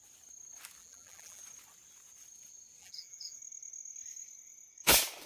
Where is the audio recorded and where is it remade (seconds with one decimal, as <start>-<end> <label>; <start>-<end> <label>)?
0.0-0.8 recorded; 0.8-1.4 remade; 1.4-2.8 recorded; 2.8-3.4 remade; 3.4-5.3 recorded